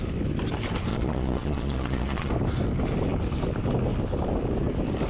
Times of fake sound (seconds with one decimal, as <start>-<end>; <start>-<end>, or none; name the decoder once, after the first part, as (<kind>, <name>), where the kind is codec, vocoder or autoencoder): 0.9-2.3 (vocoder, Vocos)